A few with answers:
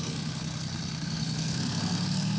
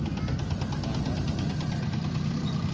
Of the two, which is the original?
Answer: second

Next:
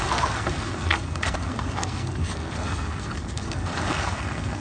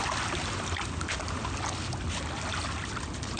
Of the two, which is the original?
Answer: second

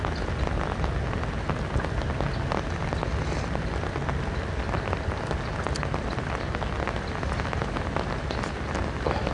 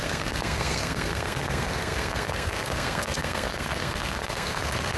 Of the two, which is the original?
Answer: first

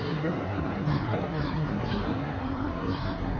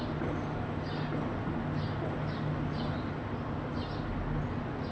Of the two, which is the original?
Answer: second